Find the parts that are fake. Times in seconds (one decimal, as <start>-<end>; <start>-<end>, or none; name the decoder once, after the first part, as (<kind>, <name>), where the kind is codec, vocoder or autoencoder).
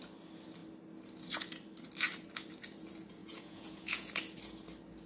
3.2-4.1 (vocoder, Vocos)